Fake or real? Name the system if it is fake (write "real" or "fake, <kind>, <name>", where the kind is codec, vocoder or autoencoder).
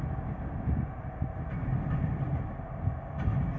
real